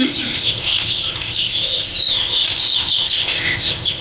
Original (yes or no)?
no